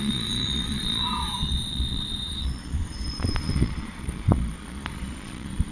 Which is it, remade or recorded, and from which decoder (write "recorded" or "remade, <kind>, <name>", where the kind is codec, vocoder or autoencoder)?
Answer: remade, vocoder, Vocos